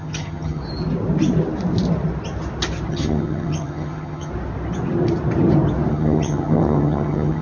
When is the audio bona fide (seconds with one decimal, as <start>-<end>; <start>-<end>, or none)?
0.6-2.9; 4.3-5.9